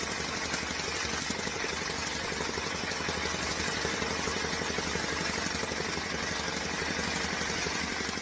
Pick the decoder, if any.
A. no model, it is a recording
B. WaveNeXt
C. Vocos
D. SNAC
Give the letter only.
A